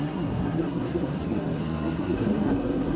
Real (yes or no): no